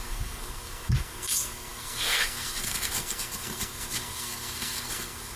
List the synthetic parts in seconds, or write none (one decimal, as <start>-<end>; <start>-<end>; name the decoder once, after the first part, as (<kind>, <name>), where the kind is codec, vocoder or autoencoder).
0.0-5.4 (codec, SNAC)